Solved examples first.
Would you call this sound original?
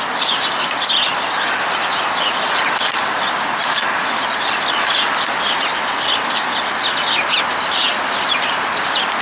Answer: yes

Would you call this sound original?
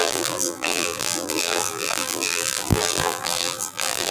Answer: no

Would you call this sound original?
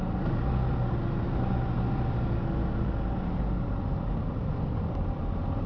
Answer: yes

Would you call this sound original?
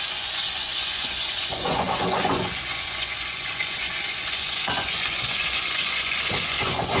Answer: no